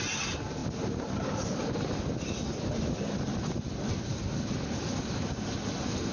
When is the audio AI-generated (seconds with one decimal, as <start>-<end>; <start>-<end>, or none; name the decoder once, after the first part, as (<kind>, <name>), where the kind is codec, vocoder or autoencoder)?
none